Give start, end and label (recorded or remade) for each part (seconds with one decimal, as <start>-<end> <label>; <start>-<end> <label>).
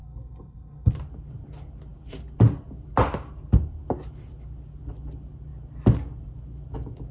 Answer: 0.0-0.9 remade; 0.9-7.1 recorded